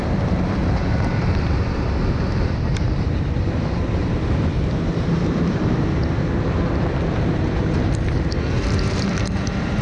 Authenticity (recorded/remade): remade